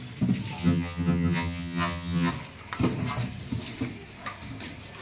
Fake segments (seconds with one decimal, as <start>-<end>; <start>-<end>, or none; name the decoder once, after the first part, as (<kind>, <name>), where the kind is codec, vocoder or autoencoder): 0.6-2.3 (vocoder, HiFi-GAN)